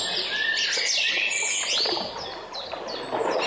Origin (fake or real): real